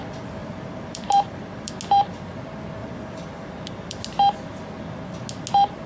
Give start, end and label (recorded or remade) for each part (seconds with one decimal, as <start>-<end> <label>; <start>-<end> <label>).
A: 0.0-0.4 recorded; 0.4-1.7 remade; 1.7-2.8 recorded; 2.8-4.0 remade; 4.0-5.9 recorded